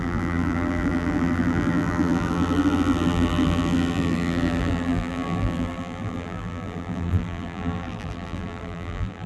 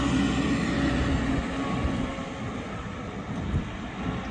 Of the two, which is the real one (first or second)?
second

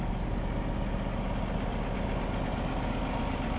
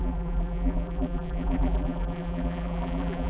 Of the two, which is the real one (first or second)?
first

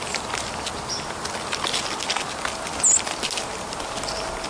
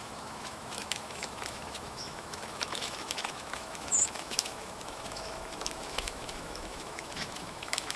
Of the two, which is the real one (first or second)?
first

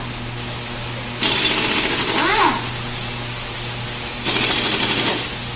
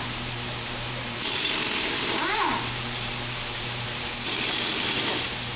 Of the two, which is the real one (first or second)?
first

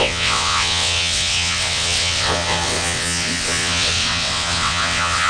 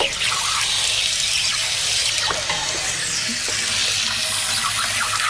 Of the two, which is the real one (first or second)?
second